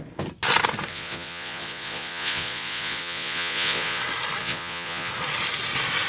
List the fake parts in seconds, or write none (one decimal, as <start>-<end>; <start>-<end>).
0.9-4.0; 4.4-5.1